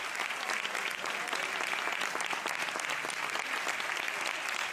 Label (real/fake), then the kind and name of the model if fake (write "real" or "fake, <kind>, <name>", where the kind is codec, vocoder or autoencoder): real